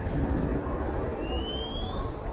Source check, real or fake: real